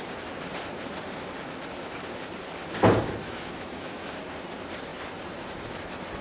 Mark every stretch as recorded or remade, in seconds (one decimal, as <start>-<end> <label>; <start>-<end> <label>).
0.0-3.2 recorded; 3.2-4.1 remade; 4.1-6.2 recorded